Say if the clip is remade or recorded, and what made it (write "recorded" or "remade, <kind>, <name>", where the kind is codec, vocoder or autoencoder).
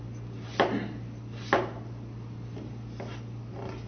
recorded